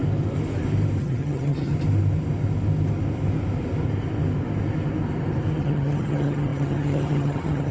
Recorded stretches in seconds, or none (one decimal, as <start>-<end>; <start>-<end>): 0.0-1.0; 1.7-5.6